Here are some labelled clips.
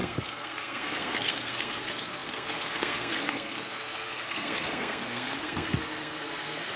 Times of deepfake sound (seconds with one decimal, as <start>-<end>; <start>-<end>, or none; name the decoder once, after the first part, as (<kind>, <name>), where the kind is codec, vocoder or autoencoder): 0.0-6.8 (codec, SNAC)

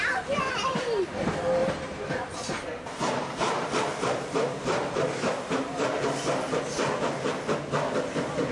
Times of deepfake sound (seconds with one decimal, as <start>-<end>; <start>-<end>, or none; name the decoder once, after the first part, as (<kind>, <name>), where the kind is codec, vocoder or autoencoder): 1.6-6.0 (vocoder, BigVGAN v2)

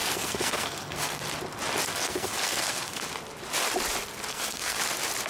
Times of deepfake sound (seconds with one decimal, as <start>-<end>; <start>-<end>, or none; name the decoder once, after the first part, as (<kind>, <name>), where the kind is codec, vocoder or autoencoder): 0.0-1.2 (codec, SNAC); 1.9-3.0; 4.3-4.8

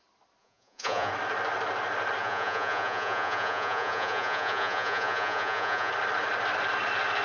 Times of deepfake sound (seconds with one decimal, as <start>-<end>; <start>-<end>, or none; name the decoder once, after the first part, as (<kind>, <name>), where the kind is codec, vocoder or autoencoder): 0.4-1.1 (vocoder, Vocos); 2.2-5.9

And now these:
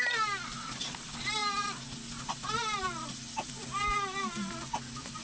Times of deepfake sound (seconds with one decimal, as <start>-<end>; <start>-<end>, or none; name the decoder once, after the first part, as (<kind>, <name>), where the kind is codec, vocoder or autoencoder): none